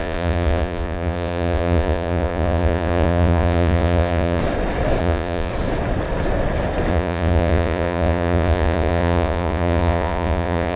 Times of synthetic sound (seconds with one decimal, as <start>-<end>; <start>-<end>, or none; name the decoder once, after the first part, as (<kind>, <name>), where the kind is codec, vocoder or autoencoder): 0.0-4.4 (vocoder, Vocos); 5.0-5.5; 6.9-10.8